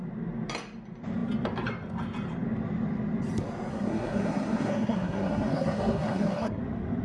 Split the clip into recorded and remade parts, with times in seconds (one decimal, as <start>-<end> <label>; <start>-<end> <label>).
0.0-3.7 recorded; 3.7-6.6 remade; 6.6-7.0 recorded